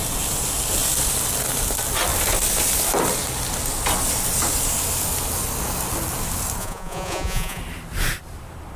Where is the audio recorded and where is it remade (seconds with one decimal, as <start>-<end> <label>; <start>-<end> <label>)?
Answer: 0.0-6.6 recorded; 6.6-7.6 remade; 7.6-8.8 recorded